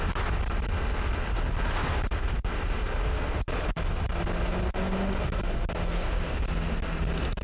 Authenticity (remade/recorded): recorded